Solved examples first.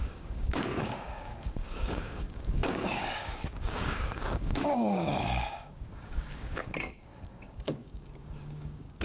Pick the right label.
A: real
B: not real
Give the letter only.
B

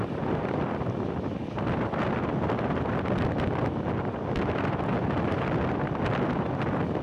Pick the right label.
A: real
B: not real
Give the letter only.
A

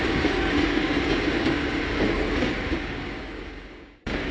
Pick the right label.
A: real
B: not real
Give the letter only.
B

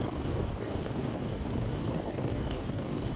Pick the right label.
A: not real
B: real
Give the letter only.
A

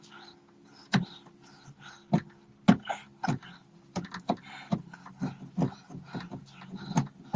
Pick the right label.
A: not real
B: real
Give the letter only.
B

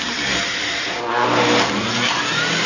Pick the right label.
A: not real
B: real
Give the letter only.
B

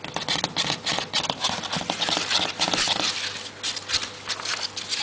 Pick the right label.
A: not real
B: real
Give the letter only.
B